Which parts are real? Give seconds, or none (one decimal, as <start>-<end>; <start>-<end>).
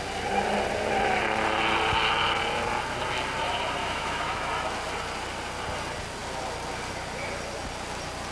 0.0-3.8; 4.5-8.3